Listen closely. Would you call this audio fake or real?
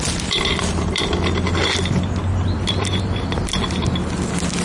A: real